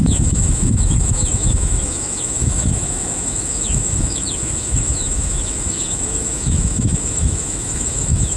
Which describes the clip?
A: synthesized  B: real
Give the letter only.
A